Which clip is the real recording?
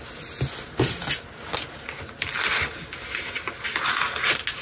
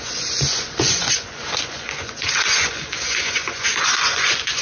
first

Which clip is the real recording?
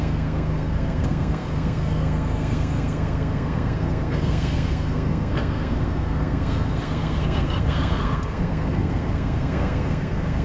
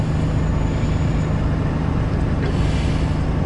second